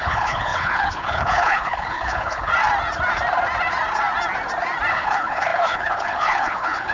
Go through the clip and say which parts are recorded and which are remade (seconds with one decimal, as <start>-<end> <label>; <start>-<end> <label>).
0.0-2.5 remade; 2.5-4.9 recorded; 4.9-6.9 remade